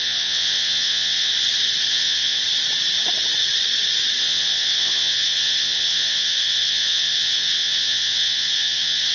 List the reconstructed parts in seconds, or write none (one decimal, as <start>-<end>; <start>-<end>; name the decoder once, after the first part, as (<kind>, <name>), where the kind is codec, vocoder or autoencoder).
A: 0.0-1.3 (vocoder, WaveNeXt); 1.9-2.4; 4.2-9.1